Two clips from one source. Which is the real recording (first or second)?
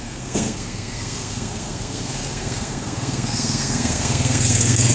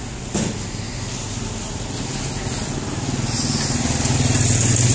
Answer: second